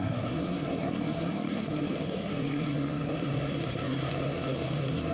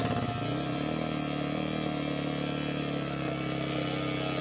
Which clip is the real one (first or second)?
second